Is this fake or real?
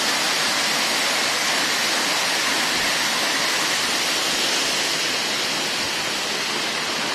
real